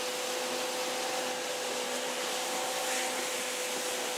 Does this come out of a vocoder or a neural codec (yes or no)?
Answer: no